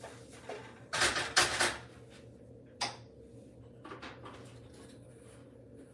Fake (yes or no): no